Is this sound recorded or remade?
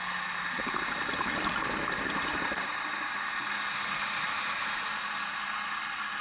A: recorded